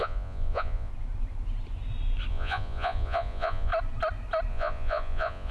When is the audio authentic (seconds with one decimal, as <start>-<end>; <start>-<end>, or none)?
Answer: 0.9-2.3; 3.7-4.5